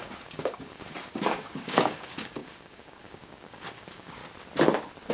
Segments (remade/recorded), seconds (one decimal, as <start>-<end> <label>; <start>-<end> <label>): 0.0-4.2 remade; 4.2-5.1 recorded